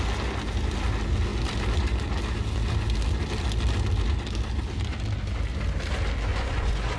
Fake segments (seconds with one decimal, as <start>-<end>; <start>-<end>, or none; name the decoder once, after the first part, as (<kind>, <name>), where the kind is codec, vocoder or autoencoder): 6.3-7.0 (vocoder, Vocos)